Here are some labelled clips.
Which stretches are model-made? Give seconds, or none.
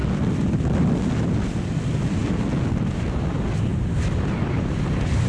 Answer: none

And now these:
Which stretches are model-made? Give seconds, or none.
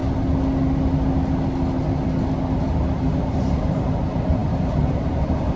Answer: 3.4-5.6 (vocoder, BigVGAN v2)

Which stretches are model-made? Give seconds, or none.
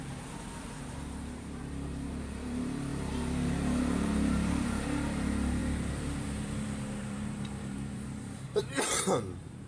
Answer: 0.0-9.7 (vocoder, BigVGAN v2)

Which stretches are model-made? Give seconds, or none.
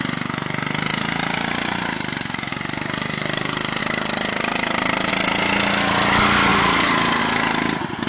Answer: 0.9-2.5 (vocoder, BigVGAN v2); 3.8-5.1; 6.5-7.2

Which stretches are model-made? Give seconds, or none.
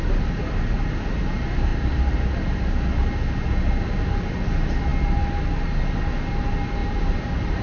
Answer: 1.7-2.3 (vocoder, BigVGAN v2); 6.8-7.6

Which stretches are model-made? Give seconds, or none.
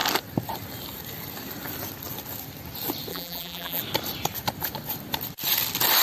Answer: 3.1-3.8 (vocoder, BigVGAN v2)